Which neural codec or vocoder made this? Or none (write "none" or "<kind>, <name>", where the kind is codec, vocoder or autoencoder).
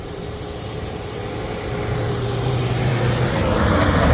vocoder, BigVGAN v2